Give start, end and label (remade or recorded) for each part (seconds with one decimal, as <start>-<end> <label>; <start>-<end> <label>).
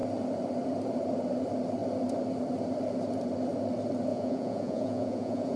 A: 0.0-4.1 recorded; 4.1-5.6 remade